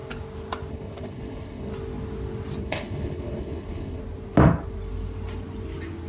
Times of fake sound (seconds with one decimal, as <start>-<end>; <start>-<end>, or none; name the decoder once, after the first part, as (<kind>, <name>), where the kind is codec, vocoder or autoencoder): 0.7-1.7 (codec, HILCodec); 2.6-4.0